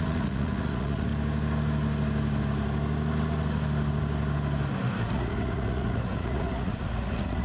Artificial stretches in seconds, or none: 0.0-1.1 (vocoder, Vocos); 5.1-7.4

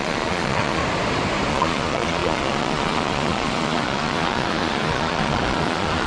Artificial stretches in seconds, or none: 0.0-0.8 (vocoder, Vocos); 1.5-6.1

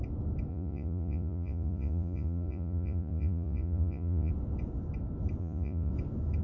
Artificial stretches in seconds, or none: 0.5-4.3 (vocoder, Vocos); 5.4-5.9

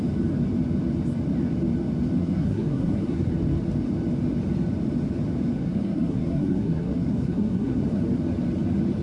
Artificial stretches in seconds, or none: 2.2-3.3 (codec, SNAC); 5.6-8.0

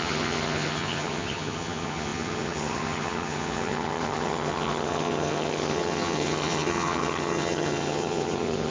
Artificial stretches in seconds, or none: 0.0-8.7 (vocoder, HiFi-GAN)

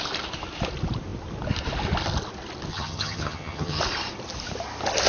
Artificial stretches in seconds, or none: 2.7-3.8 (vocoder, HiFi-GAN)

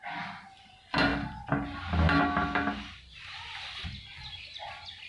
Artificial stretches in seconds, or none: none

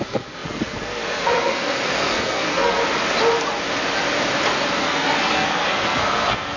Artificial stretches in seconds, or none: 0.0-2.8 (codec, SNAC); 4.8-6.6